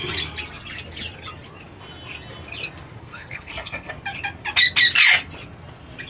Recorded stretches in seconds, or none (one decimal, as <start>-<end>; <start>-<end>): 0.0-3.0; 3.9-6.1